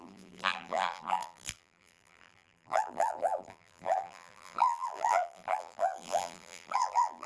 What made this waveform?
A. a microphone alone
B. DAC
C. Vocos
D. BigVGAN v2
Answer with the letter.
D